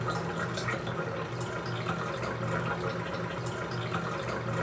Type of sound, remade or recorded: recorded